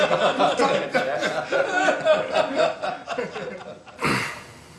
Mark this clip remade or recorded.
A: recorded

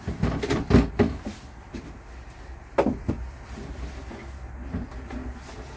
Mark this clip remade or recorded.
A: recorded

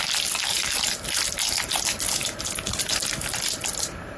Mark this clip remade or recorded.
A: recorded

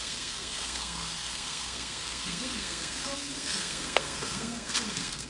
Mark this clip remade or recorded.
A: remade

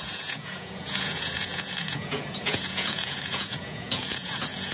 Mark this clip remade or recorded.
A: remade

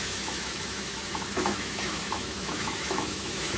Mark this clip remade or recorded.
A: remade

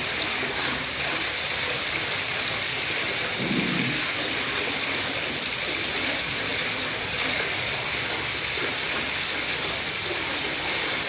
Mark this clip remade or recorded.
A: recorded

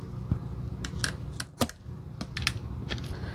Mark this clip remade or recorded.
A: recorded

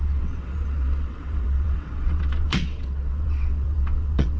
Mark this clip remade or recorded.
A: remade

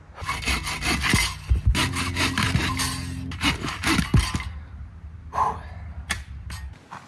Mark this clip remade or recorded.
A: recorded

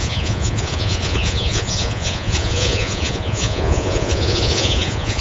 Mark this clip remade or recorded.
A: remade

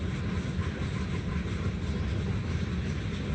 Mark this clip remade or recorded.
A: recorded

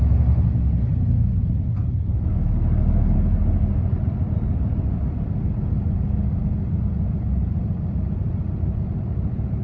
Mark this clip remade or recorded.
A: recorded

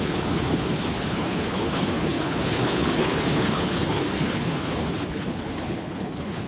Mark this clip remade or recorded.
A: remade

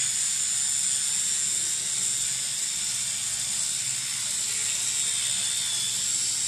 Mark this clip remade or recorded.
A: recorded